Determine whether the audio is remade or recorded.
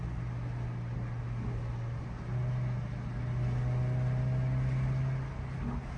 recorded